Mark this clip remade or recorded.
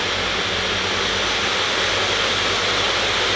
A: recorded